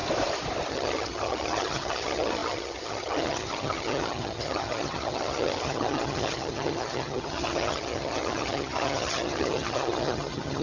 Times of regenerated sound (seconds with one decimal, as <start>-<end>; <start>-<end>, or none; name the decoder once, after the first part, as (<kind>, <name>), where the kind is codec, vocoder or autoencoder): 0.7-10.6 (vocoder, HiFi-GAN)